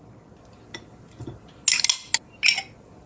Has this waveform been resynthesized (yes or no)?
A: no